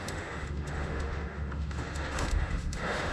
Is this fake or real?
fake